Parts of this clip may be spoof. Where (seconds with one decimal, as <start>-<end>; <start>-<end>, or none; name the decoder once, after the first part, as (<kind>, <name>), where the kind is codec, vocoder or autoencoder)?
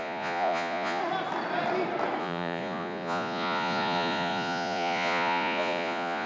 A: 0.0-1.0 (vocoder, Vocos); 2.2-6.3